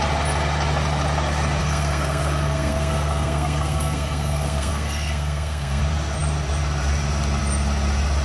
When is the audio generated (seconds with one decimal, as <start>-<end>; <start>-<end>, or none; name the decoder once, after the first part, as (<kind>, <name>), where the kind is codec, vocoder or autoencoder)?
1.6-5.8 (codec, SNAC)